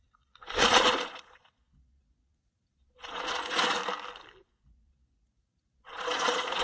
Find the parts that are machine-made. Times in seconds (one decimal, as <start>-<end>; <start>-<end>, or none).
0.0-3.8; 4.4-6.6